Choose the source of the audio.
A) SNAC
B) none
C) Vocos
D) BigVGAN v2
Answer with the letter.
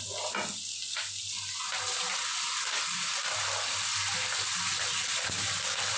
B